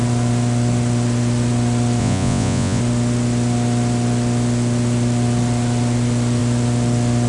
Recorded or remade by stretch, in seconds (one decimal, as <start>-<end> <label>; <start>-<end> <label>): 0.0-2.0 recorded; 2.0-2.8 remade; 2.8-7.3 recorded